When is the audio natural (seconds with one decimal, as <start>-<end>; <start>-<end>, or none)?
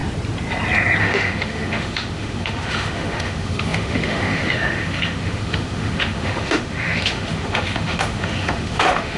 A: 0.0-1.0